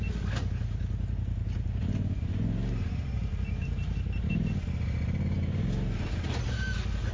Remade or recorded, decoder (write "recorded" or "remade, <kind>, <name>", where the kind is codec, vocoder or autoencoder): recorded